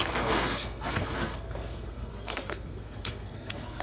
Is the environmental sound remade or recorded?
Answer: remade